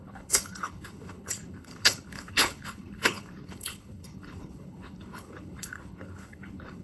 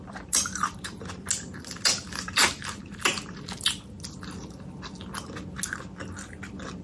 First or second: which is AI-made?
first